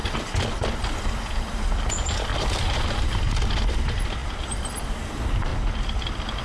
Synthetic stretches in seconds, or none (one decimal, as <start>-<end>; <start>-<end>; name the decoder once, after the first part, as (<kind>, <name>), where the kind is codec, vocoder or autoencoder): 2.3-3.5 (vocoder, BigVGAN v2)